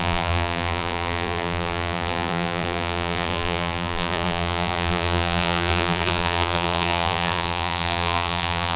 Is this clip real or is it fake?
fake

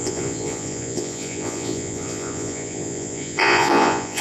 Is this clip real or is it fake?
fake